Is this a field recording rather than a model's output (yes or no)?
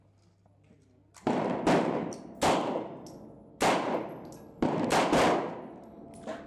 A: yes